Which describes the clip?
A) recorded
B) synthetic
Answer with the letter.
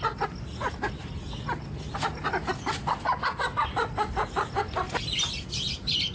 A